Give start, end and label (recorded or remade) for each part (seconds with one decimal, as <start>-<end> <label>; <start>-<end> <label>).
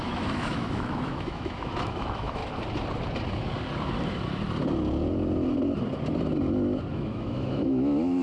0.0-2.4 remade; 2.4-6.9 recorded; 6.9-8.2 remade